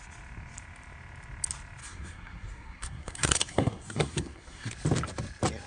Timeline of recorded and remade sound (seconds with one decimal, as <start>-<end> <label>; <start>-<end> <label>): 0.0-1.8 recorded; 1.8-4.7 remade; 4.7-5.7 recorded